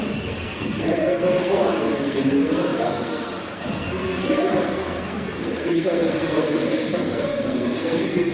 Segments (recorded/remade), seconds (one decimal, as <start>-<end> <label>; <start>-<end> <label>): 0.0-8.3 remade